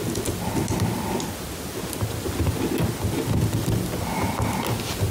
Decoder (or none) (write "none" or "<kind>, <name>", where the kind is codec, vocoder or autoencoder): none